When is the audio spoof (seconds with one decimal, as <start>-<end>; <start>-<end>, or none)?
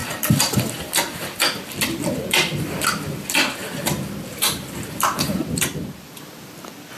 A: 0.0-7.0